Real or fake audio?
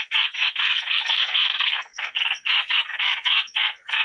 fake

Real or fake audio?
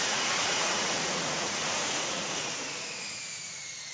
fake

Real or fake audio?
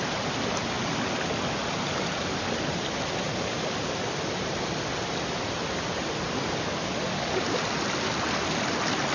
real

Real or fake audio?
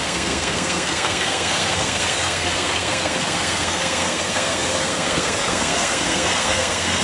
fake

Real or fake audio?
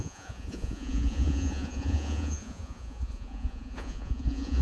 fake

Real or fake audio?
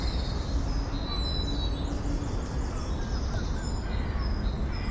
real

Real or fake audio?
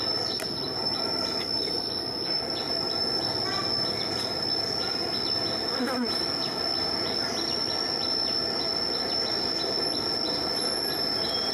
real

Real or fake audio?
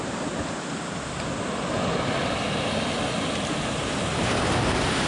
real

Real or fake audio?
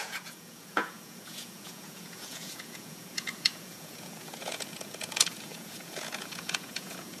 fake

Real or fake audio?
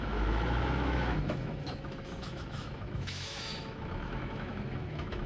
fake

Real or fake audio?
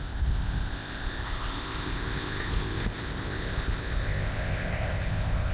fake